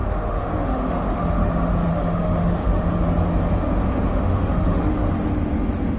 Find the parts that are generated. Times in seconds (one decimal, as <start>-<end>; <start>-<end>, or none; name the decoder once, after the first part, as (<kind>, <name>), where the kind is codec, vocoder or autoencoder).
0.0-1.5 (autoencoder, DAC-VAE); 1.9-3.0; 4.1-4.9